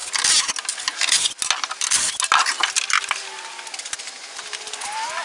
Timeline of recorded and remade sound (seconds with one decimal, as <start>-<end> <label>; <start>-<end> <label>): 0.0-5.2 recorded